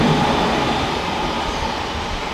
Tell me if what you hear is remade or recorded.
remade